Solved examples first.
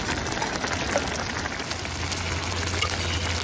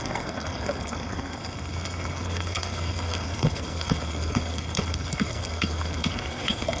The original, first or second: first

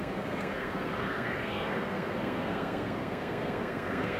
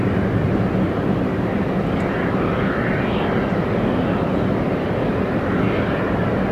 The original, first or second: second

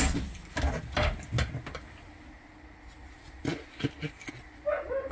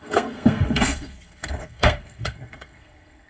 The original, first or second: first